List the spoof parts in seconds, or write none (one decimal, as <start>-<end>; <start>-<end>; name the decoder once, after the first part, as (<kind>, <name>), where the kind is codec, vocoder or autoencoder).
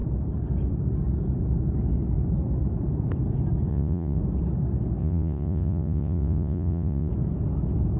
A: 3.7-4.2 (vocoder, Vocos); 5.0-7.1